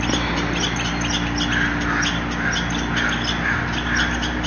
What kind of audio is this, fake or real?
real